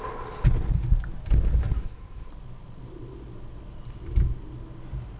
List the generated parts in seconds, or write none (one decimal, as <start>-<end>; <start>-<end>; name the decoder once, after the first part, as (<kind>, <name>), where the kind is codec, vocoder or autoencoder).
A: 1.6-2.3 (codec, SNAC)